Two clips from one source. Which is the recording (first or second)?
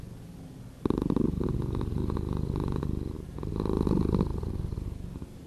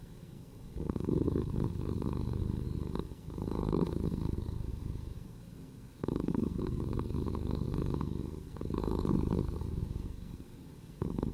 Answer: first